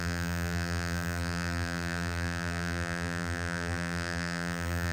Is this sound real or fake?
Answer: fake